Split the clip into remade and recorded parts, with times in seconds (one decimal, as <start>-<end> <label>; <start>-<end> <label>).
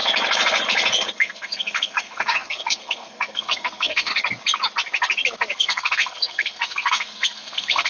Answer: 0.0-1.2 recorded; 1.2-4.1 remade; 4.1-5.6 recorded; 5.6-7.9 remade